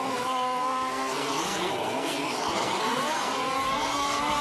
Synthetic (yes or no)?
yes